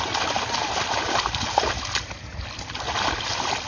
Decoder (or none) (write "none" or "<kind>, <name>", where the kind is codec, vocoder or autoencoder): none